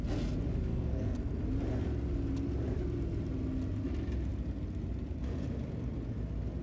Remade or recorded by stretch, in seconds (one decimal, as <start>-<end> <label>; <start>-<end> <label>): 0.0-0.7 recorded; 0.7-1.4 remade; 1.4-6.6 recorded

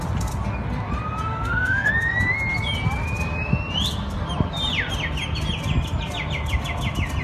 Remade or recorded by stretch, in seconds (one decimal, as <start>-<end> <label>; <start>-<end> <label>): 0.0-1.3 recorded; 1.3-1.9 remade; 1.9-7.2 recorded